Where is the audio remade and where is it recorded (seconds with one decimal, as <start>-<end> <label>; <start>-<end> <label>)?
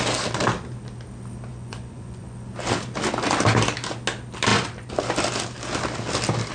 0.0-1.5 recorded; 1.5-2.5 remade; 2.5-6.5 recorded